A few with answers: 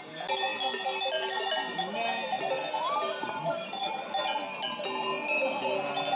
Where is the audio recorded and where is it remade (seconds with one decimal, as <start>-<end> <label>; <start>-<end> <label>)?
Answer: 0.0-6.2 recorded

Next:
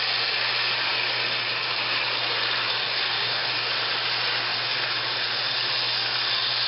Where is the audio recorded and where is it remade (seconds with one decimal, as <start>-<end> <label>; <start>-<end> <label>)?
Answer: 0.0-2.8 recorded; 2.8-3.7 remade; 3.7-6.7 recorded

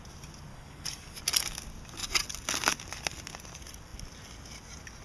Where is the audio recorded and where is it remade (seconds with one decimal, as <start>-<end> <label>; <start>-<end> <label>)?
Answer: 0.0-0.5 recorded; 0.5-1.2 remade; 1.2-5.0 recorded